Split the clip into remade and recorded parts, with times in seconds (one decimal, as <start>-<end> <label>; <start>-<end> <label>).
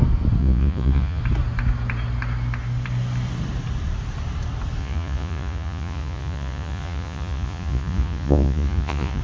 0.0-0.4 recorded; 0.4-1.2 remade; 1.2-4.8 recorded; 4.8-9.2 remade